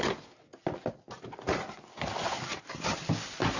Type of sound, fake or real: real